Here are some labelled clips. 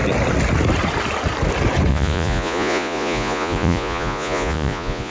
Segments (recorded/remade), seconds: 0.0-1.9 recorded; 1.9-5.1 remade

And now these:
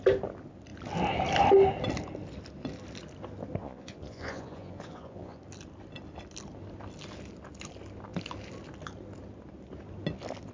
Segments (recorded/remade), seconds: 0.0-3.6 recorded; 3.6-5.4 remade; 5.4-10.5 recorded

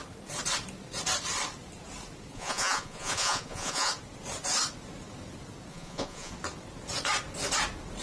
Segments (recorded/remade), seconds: 0.0-2.3 recorded; 2.3-3.9 remade; 3.9-5.7 recorded; 5.7-6.3 remade; 6.3-8.0 recorded

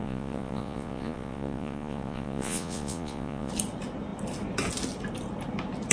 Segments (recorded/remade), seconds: 0.0-3.5 remade; 3.5-5.9 recorded

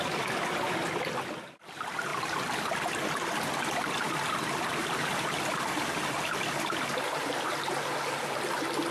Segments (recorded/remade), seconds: 0.0-8.9 recorded

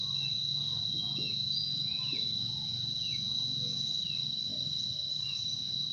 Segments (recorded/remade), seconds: 0.0-0.5 recorded; 0.5-3.9 remade; 3.9-5.9 recorded

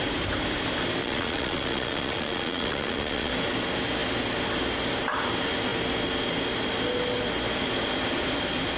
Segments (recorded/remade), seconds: 0.0-1.0 recorded; 1.0-3.3 remade; 3.3-8.8 recorded

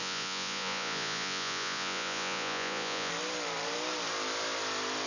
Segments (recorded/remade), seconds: 0.0-3.1 remade; 3.1-5.1 recorded